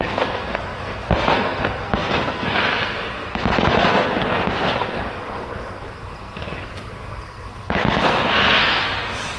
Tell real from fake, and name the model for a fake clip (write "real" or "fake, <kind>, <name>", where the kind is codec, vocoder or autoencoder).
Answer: fake, codec, SNAC